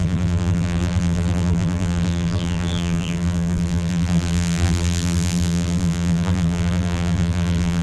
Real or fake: fake